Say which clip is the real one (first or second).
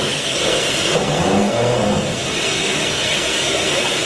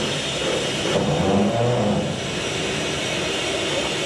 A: second